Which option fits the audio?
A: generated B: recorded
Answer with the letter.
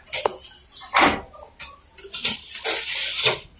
B